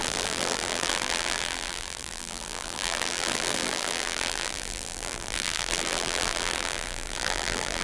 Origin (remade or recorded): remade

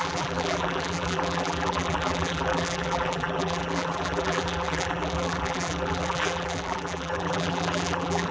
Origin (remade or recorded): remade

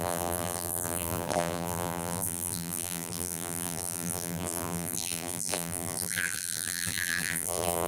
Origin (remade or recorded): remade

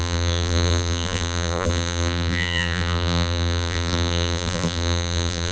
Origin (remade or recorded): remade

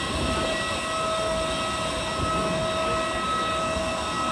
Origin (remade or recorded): recorded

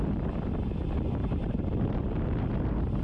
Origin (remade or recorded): recorded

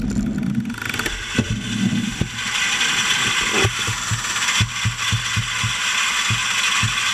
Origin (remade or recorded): recorded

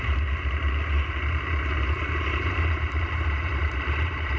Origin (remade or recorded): remade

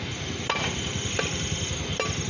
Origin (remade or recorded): recorded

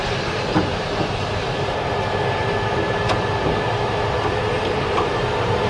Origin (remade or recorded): remade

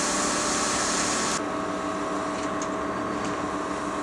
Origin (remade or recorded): recorded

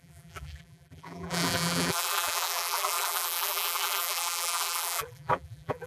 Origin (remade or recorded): remade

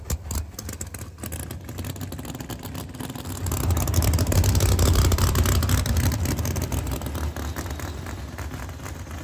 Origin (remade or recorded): recorded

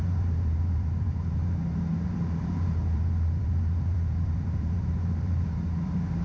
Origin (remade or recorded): remade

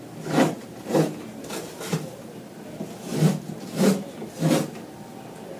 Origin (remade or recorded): recorded